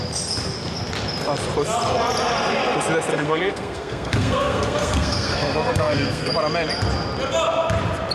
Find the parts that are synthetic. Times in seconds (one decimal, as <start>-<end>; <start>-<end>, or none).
3.1-6.3